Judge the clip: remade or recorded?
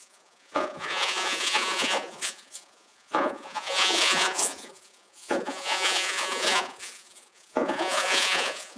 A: remade